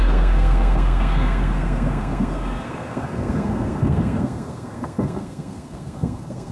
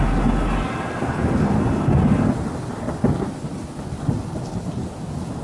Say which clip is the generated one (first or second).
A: first